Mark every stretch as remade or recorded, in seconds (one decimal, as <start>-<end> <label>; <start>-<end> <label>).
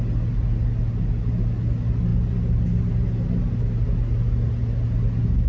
0.0-5.5 recorded